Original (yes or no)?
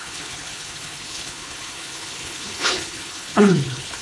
no